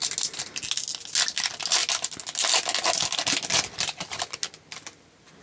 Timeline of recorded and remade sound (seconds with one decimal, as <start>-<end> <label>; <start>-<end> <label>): 0.0-5.4 recorded